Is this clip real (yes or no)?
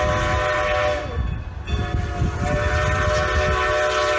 yes